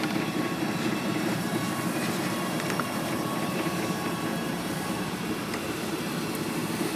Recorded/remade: remade